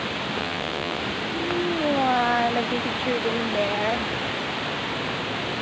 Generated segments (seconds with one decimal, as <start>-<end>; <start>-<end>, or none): 0.4-1.0